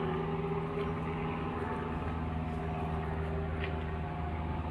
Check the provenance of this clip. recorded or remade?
recorded